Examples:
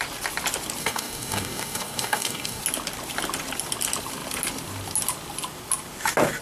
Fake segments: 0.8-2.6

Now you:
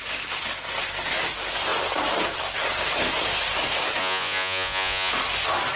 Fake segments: 4.0-5.1

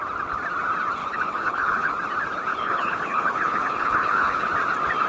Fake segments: 1.0-1.9; 2.5-4.5

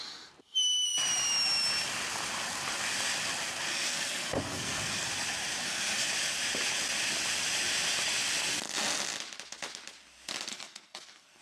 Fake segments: 3.7-5.1; 5.6-6.1; 10.5-11.4

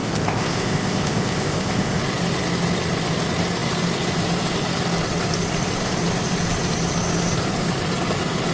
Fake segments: 0.0-2.0

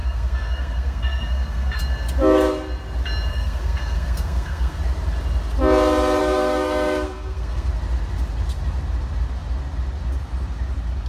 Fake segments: 0.0-1.8; 3.3-4.8; 6.2-7.7

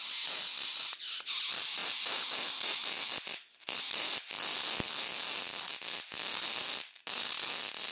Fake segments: none